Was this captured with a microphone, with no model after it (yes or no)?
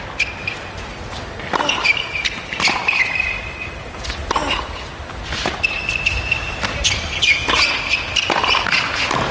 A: yes